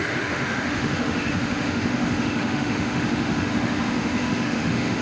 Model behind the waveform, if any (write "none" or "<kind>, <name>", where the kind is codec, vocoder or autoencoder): autoencoder, DAC-VAE